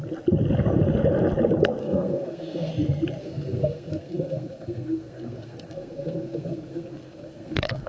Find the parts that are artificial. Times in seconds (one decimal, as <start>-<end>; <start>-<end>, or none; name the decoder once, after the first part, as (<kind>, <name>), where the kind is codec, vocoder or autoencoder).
1.8-2.7 (codec, SNAC); 3.2-7.9